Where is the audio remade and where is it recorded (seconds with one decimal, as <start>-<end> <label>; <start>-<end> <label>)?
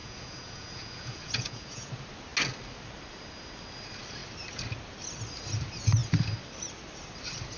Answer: 0.0-1.9 remade; 1.9-7.6 recorded